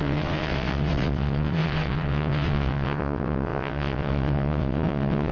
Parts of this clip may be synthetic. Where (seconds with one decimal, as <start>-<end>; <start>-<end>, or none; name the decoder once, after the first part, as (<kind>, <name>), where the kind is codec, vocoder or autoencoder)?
0.0-5.3 (vocoder, WaveNeXt)